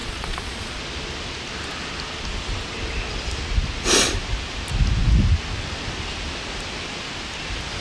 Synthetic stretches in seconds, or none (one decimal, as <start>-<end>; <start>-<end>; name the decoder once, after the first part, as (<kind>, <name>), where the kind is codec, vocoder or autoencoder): 0.0-0.8 (vocoder, Vocos)

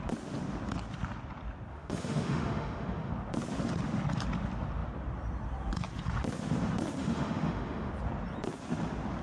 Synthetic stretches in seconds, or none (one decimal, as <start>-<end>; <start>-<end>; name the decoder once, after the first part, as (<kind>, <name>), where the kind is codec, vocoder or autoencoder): 1.7-3.1 (autoencoder, DAC-VAE); 7.0-7.9

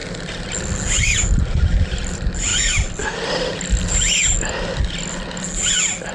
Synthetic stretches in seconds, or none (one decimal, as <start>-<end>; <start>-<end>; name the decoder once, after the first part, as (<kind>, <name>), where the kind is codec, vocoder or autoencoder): none

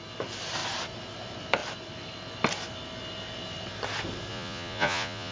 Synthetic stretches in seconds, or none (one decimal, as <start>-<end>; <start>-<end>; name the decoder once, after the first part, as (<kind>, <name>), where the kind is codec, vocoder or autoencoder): 4.3-5.3 (vocoder, Vocos)

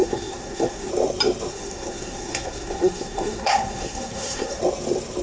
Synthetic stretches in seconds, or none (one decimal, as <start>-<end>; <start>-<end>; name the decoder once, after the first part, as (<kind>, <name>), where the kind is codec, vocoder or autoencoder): 0.0-0.9 (codec, SNAC); 1.5-4.6